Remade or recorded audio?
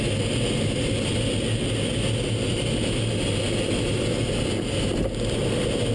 recorded